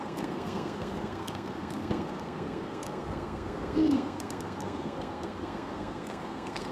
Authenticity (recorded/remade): remade